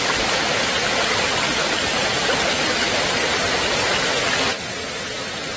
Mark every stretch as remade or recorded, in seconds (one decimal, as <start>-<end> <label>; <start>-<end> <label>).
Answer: 0.0-0.8 recorded; 0.8-3.6 remade; 3.6-5.6 recorded